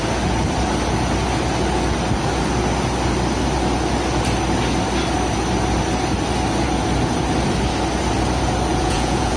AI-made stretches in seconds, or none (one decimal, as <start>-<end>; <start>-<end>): 8.7-9.4